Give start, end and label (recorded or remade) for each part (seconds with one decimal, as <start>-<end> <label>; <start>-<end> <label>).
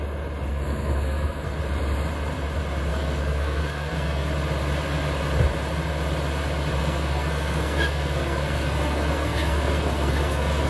0.0-0.5 recorded; 0.5-1.6 remade; 1.6-2.9 recorded; 2.9-4.3 remade; 4.3-6.8 recorded; 6.8-10.7 remade